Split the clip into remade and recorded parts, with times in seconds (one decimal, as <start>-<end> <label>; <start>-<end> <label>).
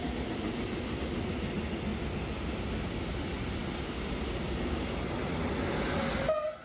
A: 0.0-6.6 recorded